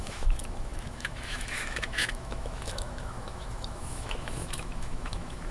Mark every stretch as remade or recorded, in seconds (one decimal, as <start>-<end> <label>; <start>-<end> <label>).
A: 0.0-5.5 remade